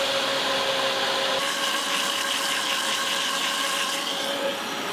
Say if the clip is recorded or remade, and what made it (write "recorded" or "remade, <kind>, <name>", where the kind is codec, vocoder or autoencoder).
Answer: recorded